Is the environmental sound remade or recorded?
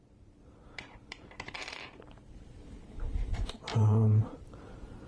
remade